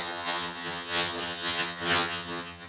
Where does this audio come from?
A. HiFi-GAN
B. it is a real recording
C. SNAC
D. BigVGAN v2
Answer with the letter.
A